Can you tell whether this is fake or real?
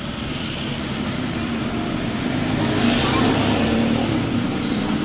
real